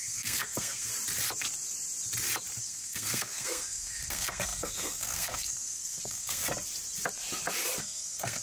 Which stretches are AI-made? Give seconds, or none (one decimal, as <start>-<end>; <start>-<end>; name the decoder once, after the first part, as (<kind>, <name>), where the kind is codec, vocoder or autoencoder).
0.0-0.9 (codec, SNAC); 2.6-6.4; 7.8-8.4